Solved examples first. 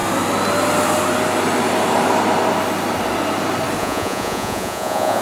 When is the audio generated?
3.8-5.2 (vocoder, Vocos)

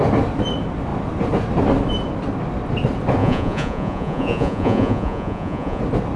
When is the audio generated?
3.2-5.8 (vocoder, Vocos)

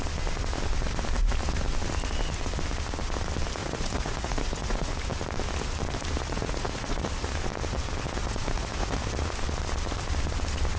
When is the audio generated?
3.6-4.9 (vocoder, Vocos); 6.2-7.1; 8.2-9.0

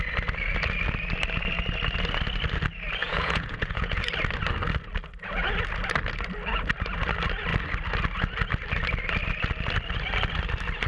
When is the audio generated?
3.0-4.0 (vocoder, Vocos)

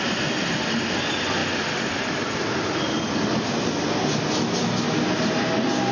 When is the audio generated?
none

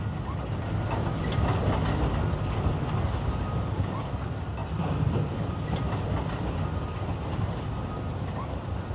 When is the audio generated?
none

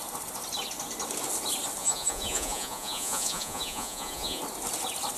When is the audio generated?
1.8-4.4 (vocoder, Vocos)